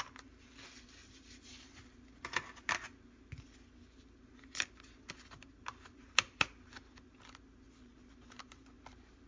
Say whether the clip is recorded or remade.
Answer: recorded